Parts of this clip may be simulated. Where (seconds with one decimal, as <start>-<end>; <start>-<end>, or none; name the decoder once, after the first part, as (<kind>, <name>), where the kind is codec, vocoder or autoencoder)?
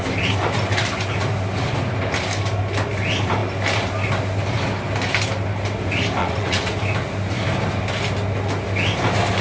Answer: 6.2-6.7 (vocoder, WaveNeXt)